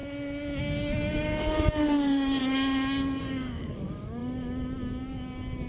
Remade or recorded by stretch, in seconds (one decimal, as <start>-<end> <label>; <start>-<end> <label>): 0.0-0.6 recorded; 0.6-2.4 remade; 2.4-3.2 recorded; 3.2-4.2 remade; 4.2-5.7 recorded